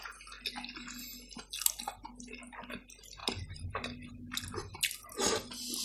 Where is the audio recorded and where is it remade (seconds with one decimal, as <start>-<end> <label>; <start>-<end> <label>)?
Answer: 0.0-5.8 recorded